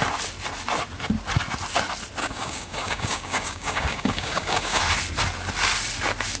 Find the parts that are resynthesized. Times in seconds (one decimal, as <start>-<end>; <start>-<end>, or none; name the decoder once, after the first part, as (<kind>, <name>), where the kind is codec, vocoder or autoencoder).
2.2-4.8 (codec, DAC)